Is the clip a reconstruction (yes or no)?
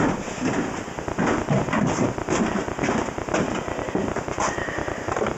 no